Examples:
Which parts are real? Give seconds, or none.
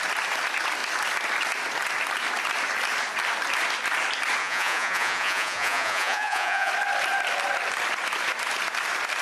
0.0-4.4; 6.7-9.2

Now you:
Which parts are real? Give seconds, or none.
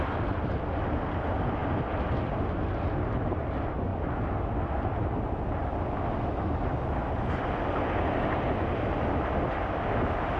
0.0-10.4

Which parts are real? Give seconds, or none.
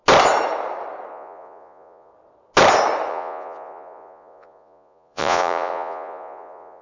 0.0-1.1; 2.1-3.1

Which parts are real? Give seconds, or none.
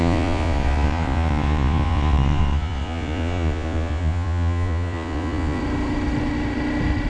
5.6-7.1